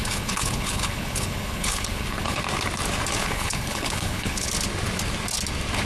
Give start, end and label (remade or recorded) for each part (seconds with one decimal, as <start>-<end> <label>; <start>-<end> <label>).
0.0-2.4 remade; 2.4-3.2 recorded; 3.2-4.5 remade; 4.5-5.9 recorded